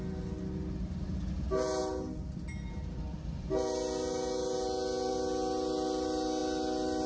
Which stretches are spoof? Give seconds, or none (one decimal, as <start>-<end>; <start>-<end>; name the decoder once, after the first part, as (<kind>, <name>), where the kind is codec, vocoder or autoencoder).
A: none